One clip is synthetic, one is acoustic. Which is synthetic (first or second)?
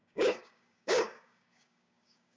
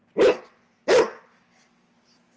first